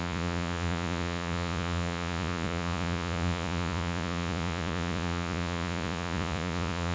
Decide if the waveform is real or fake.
fake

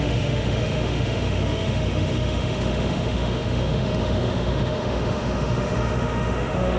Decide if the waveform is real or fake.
fake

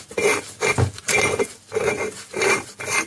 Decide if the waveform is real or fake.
fake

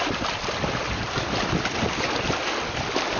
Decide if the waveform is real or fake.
real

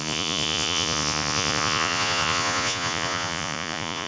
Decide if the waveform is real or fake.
fake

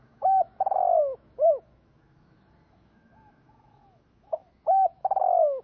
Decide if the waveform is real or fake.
fake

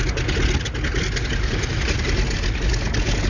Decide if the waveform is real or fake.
real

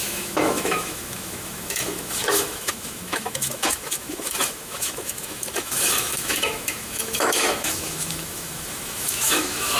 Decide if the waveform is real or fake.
fake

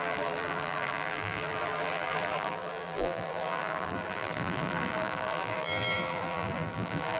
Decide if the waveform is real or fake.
fake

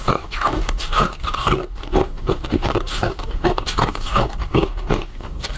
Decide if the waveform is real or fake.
fake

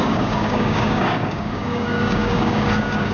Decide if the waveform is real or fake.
fake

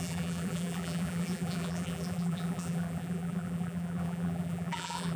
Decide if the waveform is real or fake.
fake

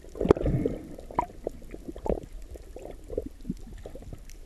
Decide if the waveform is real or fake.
real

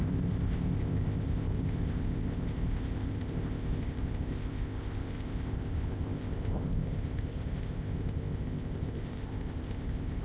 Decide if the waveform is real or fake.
fake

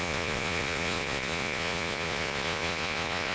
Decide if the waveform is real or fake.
fake